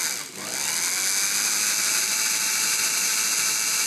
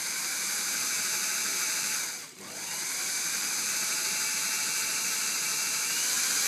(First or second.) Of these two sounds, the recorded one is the first